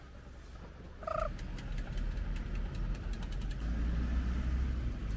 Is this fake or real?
real